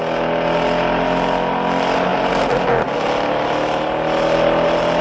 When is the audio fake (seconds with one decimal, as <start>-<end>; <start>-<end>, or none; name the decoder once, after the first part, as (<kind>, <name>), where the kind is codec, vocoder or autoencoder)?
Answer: none